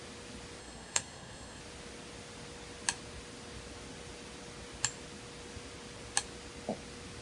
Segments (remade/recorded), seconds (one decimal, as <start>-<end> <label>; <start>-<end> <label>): 0.0-0.6 recorded; 0.6-1.6 remade; 1.6-7.2 recorded